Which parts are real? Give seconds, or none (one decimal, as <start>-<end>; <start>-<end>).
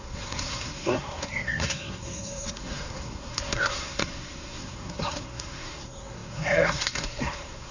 none